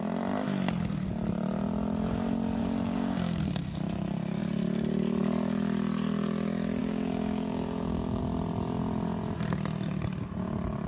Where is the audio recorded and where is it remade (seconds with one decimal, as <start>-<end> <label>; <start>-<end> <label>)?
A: 0.0-2.6 recorded; 2.6-3.4 remade; 3.4-6.8 recorded; 6.8-8.2 remade; 8.2-10.9 recorded